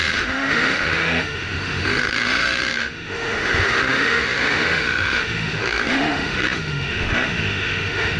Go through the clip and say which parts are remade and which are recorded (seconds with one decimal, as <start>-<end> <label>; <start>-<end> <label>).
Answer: 0.0-8.2 remade

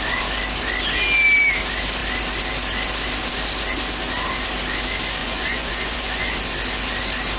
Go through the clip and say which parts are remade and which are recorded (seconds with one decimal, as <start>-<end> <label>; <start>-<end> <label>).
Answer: 0.0-5.2 recorded; 5.2-6.4 remade; 6.4-7.4 recorded

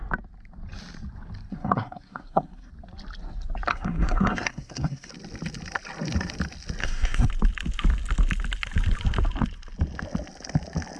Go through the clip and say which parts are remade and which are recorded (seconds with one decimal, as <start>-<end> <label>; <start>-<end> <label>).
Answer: 0.0-1.5 recorded; 1.5-2.7 remade; 2.7-3.7 recorded; 3.7-5.1 remade; 5.1-6.8 recorded; 6.8-7.3 remade; 7.3-11.0 recorded

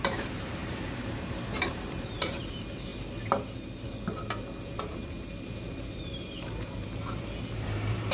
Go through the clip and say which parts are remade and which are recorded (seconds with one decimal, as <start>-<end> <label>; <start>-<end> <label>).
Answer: 0.0-2.9 remade; 2.9-4.8 recorded; 4.8-8.1 remade

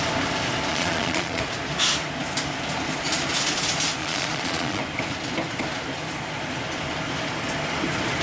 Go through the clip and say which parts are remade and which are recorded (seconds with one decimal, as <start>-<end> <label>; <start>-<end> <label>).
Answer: 0.0-0.7 recorded; 0.7-1.4 remade; 1.4-4.0 recorded; 4.0-4.8 remade; 4.8-8.2 recorded

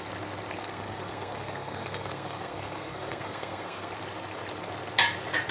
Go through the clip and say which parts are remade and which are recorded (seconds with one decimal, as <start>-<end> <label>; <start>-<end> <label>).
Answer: 0.0-0.6 recorded; 0.6-3.9 remade; 3.9-5.5 recorded